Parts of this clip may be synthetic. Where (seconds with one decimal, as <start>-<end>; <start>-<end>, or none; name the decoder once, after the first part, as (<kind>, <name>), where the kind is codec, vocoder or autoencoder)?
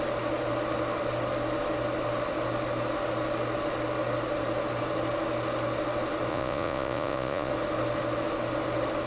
6.3-7.5 (vocoder, Vocos)